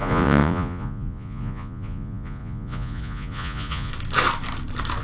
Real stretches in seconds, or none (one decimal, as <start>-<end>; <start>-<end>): 3.9-5.0